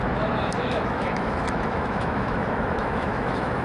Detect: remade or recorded remade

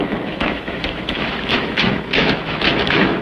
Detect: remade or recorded remade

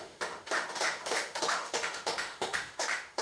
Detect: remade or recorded remade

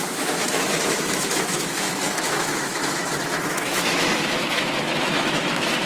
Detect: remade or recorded remade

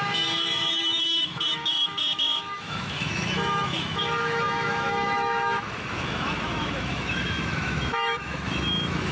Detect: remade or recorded remade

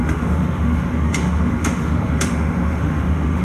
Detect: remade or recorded remade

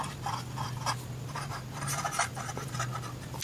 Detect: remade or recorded recorded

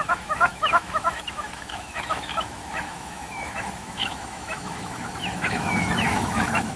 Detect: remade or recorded remade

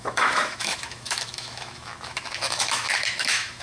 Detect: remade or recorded remade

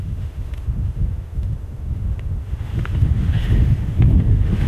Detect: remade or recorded remade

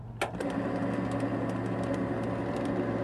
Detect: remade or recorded recorded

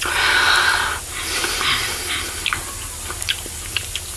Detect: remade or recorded recorded